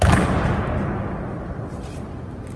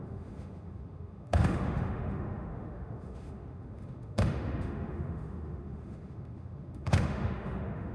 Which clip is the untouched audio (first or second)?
first